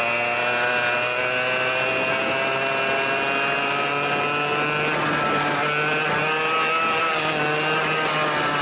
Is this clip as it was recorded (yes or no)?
yes